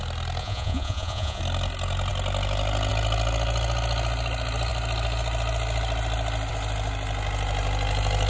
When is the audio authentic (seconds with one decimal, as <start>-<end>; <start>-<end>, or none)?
0.0-0.4; 1.4-8.3